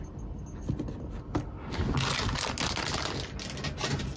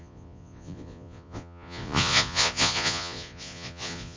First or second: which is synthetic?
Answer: second